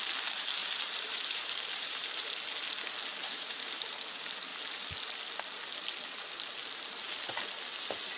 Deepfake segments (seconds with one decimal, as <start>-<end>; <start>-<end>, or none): 0.6-2.3; 3.2-3.9